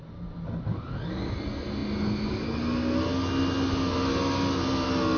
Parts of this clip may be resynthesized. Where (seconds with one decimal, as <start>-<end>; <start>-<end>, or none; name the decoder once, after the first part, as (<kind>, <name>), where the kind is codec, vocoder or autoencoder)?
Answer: none